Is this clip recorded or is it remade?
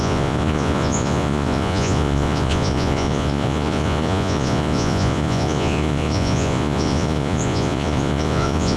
remade